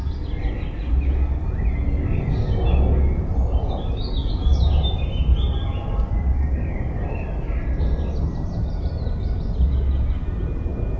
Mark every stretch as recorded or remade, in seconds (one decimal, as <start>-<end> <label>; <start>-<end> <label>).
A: 0.0-4.2 recorded; 4.2-8.9 remade; 8.9-11.0 recorded